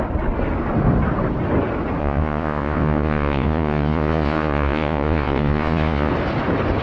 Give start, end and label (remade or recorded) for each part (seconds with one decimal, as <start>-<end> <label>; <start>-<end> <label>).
0.0-2.0 recorded; 2.0-6.1 remade; 6.1-6.8 recorded